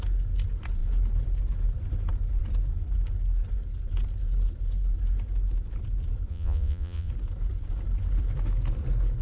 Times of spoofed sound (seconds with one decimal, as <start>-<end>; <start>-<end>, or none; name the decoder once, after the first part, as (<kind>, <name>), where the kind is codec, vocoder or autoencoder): 6.3-7.1 (vocoder, Vocos)